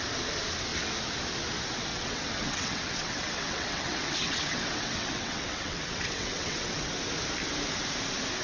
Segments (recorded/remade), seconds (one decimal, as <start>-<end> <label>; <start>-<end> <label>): 0.0-1.9 recorded; 1.9-6.9 remade; 6.9-8.4 recorded